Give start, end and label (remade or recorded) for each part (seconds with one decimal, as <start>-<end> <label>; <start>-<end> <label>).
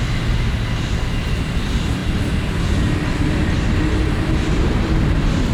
0.0-5.5 remade